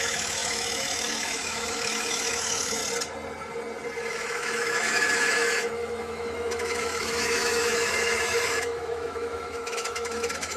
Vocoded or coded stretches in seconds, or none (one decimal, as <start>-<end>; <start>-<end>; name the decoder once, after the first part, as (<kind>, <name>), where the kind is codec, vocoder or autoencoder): 0.0-2.8 (autoencoder, DAC-VAE); 4.1-10.6